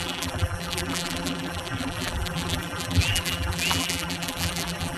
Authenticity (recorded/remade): remade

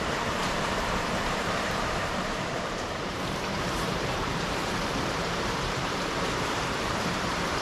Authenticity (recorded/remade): remade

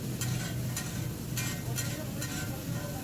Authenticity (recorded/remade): recorded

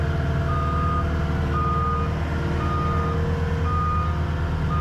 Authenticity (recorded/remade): recorded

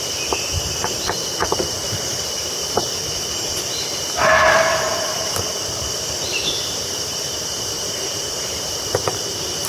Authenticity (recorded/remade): remade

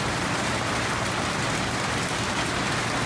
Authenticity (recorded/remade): recorded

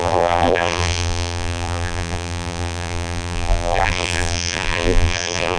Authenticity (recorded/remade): remade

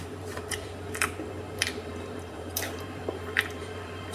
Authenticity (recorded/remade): remade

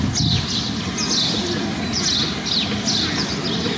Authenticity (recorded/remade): recorded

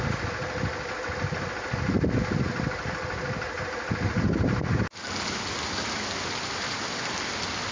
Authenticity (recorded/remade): recorded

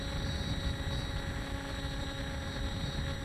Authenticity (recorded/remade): recorded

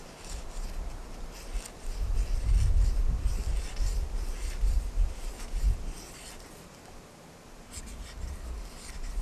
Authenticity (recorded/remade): recorded